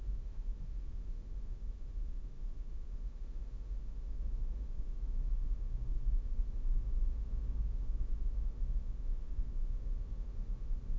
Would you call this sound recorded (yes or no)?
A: no